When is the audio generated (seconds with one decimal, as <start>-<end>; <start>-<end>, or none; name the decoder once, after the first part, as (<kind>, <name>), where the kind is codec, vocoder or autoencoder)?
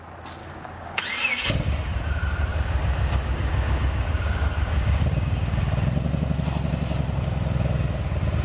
0.4-1.0 (codec, DAC); 2.5-5.6